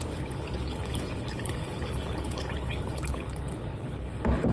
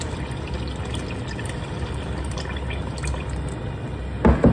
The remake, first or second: first